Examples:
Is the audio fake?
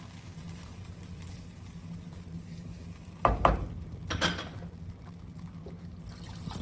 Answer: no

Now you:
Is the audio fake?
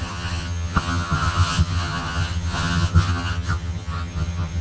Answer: yes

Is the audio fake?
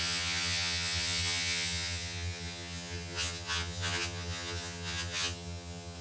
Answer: yes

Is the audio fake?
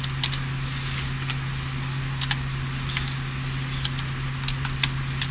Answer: no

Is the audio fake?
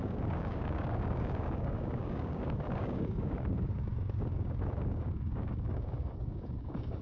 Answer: yes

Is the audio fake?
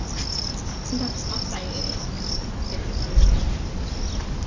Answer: no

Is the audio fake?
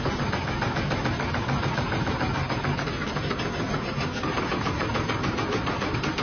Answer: no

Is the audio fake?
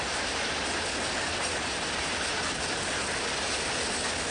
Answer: no